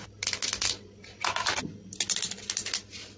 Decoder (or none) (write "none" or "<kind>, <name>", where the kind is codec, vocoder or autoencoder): none